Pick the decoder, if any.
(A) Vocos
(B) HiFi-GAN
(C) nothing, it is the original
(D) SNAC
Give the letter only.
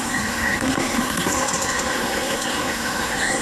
D